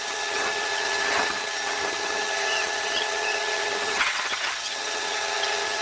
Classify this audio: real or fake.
fake